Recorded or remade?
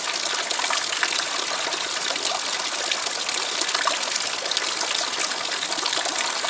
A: recorded